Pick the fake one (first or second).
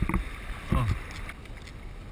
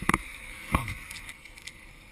second